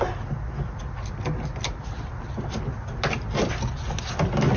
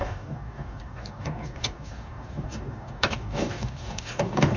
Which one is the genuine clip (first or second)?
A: first